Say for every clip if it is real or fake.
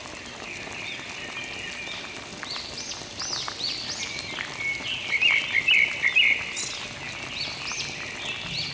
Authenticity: real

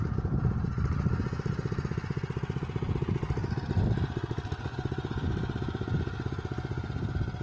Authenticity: real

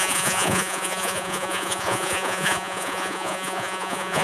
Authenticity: fake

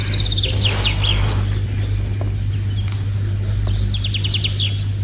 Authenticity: real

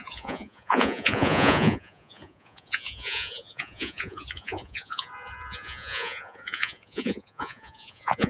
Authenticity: fake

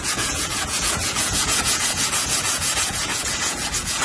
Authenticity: fake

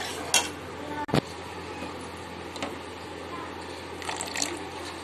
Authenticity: real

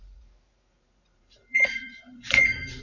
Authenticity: fake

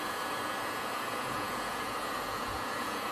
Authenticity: fake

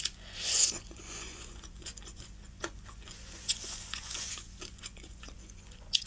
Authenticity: fake